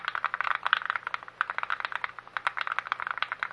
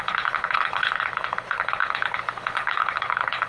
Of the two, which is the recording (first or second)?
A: first